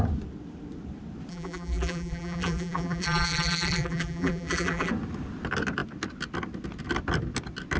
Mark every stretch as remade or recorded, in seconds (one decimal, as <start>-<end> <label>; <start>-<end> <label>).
0.0-1.3 recorded; 1.3-4.9 remade; 4.9-7.8 recorded